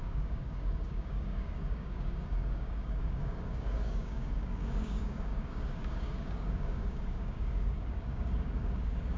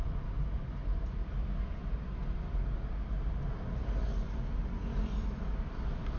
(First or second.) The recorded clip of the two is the second